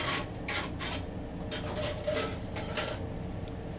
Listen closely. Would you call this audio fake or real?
real